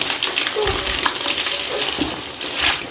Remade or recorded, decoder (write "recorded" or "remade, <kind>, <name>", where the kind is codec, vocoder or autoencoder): recorded